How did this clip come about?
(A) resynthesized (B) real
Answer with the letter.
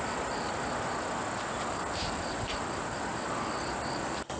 B